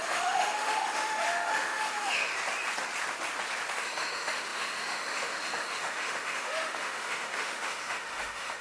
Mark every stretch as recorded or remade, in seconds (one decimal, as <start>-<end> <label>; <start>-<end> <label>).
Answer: 0.0-2.3 remade; 2.3-3.8 recorded; 3.8-8.6 remade